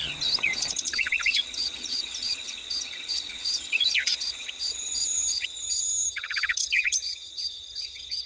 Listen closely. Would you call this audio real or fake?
fake